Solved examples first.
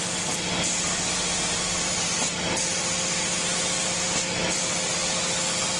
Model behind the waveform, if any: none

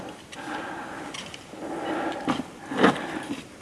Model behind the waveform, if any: none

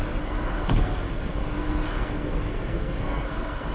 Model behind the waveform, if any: codec, SNAC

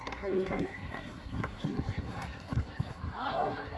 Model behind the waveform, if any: codec, SNAC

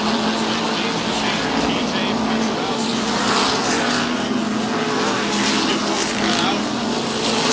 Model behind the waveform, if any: none